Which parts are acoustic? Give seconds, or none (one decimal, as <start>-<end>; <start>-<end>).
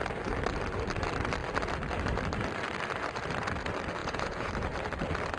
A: 0.0-4.0; 4.5-5.4